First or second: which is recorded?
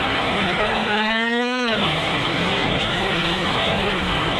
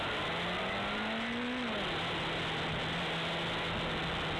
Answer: second